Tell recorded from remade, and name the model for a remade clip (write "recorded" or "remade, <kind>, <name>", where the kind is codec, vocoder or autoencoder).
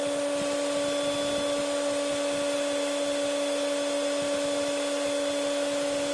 recorded